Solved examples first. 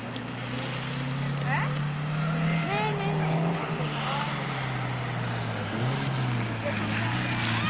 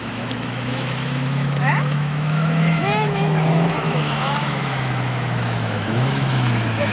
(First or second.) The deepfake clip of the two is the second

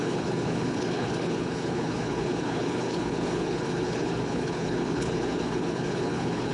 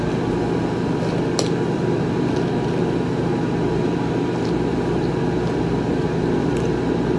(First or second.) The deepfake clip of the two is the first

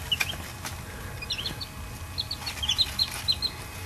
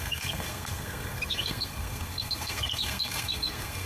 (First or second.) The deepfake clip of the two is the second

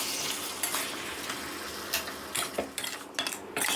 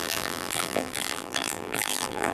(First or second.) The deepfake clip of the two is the second